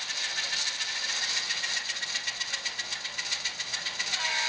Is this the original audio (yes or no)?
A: yes